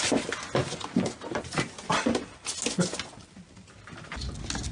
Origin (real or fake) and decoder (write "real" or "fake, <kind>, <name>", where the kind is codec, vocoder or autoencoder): real